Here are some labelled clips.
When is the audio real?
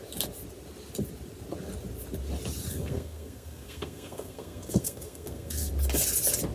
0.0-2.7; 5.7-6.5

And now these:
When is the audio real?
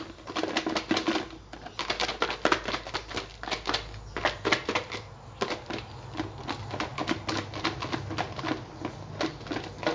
0.0-9.9